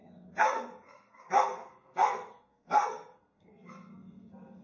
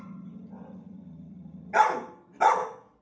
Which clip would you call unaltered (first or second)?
second